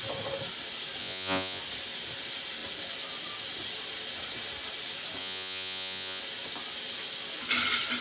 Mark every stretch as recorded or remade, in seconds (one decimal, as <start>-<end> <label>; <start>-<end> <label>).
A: 0.0-1.0 recorded; 1.0-1.6 remade; 1.6-5.2 recorded; 5.2-6.2 remade; 6.2-8.0 recorded